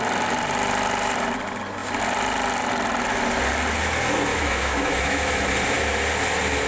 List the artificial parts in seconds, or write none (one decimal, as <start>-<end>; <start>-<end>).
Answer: 4.3-5.5